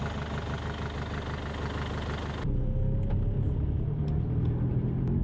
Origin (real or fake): real